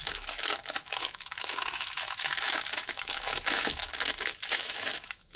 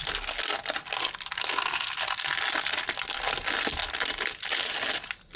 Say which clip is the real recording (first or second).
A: second